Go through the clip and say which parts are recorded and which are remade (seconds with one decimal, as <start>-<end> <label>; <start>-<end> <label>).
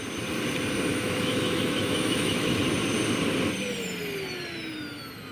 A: 0.0-0.9 recorded; 0.9-2.6 remade; 2.6-5.3 recorded